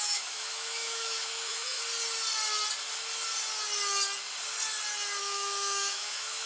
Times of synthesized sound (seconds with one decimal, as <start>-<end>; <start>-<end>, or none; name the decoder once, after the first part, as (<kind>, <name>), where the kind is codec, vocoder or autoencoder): 0.0-1.8 (autoencoder, DAC-VAE); 5.2-6.5